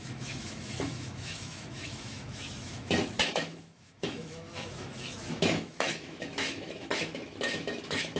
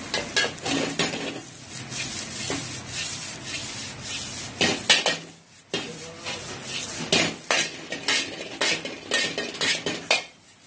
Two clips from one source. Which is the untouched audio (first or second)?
second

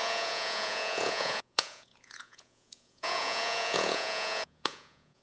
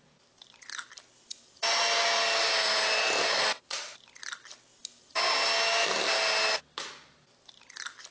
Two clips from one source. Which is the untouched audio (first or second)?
second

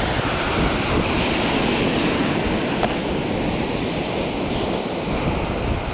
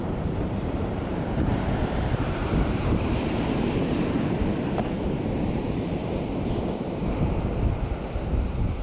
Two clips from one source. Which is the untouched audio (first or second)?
first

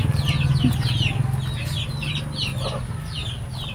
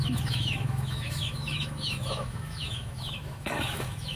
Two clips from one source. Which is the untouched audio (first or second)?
first